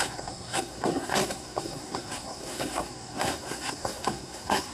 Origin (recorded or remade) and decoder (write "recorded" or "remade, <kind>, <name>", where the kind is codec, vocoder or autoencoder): remade, codec, SNAC